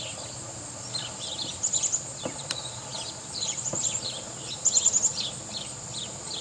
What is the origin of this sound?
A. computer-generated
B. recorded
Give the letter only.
B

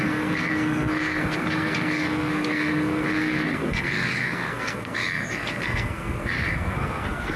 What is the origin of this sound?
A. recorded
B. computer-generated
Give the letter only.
B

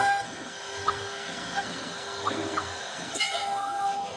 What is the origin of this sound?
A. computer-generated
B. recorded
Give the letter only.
A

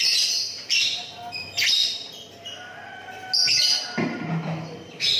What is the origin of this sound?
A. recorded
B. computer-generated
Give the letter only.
A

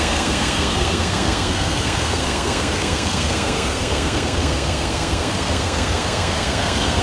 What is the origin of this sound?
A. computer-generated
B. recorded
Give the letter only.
A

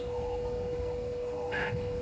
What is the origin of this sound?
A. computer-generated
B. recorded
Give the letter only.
A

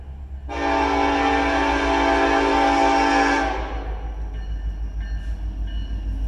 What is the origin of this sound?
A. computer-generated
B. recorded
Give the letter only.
B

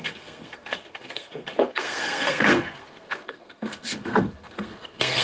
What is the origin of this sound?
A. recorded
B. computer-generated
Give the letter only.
B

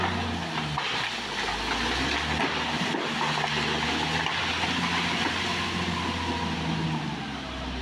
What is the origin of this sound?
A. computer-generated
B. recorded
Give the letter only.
B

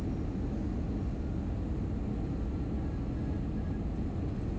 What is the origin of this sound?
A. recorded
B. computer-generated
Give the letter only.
A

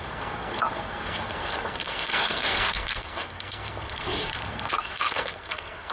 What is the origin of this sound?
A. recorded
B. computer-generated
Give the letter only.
B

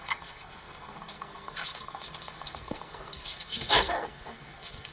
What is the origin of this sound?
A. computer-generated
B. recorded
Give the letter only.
A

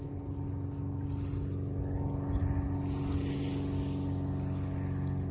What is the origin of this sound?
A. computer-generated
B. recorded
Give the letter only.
B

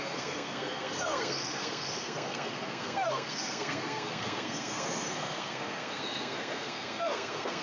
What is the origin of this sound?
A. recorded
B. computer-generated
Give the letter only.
B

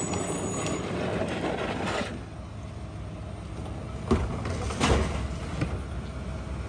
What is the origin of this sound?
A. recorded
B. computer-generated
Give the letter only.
A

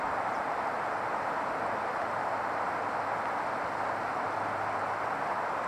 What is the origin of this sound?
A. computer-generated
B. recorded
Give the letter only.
B